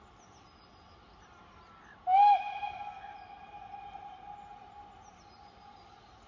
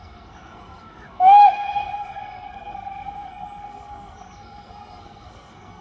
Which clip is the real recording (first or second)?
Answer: first